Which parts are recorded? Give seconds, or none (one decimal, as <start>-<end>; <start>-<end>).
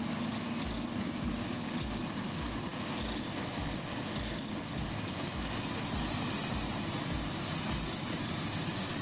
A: 0.0-9.0